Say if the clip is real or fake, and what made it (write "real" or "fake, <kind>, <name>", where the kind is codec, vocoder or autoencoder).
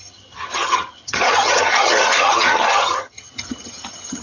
fake, vocoder, HiFi-GAN